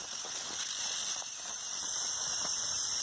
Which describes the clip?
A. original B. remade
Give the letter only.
A